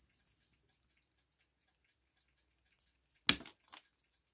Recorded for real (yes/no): yes